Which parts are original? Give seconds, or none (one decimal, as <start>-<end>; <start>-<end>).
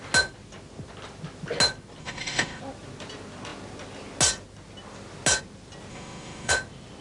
0.0-2.0; 2.6-5.9; 6.5-7.0